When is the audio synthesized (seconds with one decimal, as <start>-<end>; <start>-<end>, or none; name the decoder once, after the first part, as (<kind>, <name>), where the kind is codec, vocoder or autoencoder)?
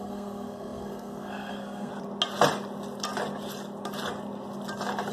0.0-1.9 (codec, SNAC)